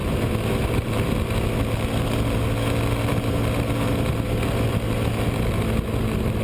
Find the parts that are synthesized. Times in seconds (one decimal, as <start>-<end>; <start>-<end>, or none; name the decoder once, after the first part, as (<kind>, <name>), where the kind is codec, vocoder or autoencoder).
none

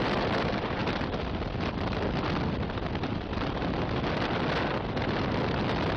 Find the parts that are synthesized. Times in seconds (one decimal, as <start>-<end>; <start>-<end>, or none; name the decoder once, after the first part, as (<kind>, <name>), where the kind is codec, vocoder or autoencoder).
none

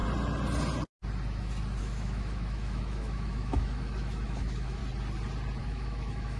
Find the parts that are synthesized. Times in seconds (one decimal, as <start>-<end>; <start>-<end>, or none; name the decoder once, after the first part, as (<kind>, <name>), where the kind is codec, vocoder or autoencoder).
1.8-4.8 (autoencoder, DAC-VAE); 5.6-6.4

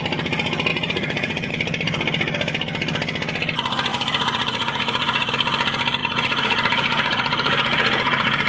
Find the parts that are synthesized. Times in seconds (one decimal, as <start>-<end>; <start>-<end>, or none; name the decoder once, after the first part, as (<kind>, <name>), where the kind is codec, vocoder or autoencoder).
0.7-1.5 (vocoder, Vocos); 3.9-5.3; 6.0-8.5